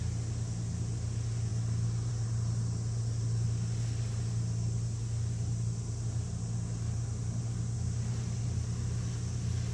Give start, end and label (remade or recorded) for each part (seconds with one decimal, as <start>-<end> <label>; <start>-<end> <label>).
0.0-9.7 recorded